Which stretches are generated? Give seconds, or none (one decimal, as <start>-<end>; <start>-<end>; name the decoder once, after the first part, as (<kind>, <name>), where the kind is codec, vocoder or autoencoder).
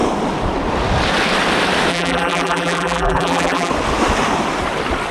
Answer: 1.9-3.7 (vocoder, BigVGAN v2)